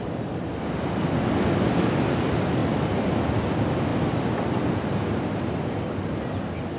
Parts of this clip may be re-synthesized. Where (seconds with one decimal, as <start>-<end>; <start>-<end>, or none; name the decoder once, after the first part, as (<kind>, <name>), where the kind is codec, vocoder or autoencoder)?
none